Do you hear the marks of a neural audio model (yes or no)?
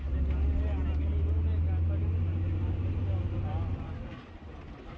no